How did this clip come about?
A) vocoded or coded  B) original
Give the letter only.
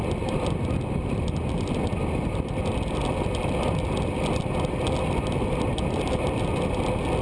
B